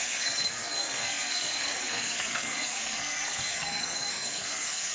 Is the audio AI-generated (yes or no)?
yes